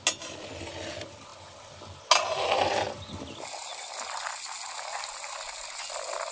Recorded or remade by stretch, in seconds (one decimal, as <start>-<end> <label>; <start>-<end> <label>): 0.0-6.3 recorded